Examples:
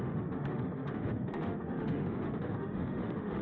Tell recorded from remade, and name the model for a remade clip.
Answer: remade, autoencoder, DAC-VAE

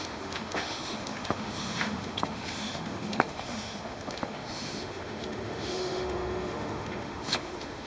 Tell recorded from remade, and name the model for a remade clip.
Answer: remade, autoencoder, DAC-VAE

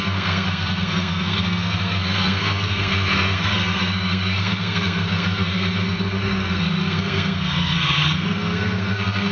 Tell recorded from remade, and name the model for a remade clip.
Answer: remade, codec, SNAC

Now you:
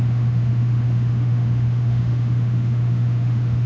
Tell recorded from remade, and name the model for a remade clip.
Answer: remade, autoencoder, DAC-VAE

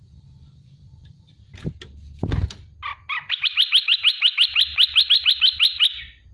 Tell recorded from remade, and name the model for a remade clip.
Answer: recorded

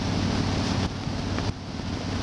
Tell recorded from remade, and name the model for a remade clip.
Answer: recorded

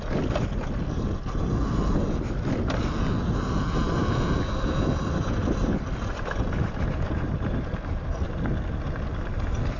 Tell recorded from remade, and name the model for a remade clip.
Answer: recorded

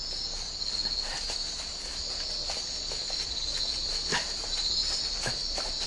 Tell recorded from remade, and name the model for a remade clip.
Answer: recorded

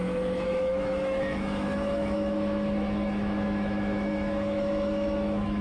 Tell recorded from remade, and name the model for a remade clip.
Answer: remade, autoencoder, DAC-VAE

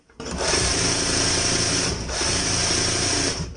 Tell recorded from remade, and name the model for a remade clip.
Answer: remade, vocoder, BigVGAN v2